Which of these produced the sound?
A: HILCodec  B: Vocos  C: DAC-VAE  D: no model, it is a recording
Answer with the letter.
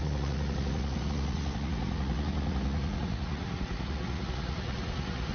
B